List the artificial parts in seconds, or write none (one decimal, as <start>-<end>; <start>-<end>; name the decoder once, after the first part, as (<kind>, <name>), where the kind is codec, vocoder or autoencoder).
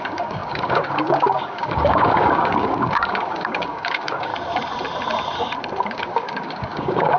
0.0-4.3 (codec, DAC); 5.9-7.2